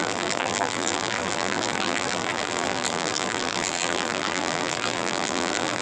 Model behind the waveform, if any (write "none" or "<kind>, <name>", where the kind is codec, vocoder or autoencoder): vocoder, BigVGAN v2